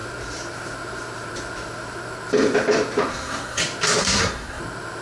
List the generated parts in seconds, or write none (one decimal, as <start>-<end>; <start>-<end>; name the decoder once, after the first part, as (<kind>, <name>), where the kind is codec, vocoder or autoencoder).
3.1-3.6 (codec, SNAC); 4.0-4.6